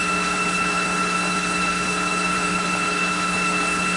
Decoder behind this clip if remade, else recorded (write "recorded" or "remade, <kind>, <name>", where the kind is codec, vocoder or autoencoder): remade, codec, HILCodec